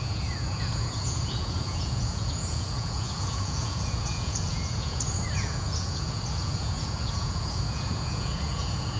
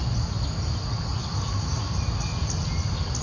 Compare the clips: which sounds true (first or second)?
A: second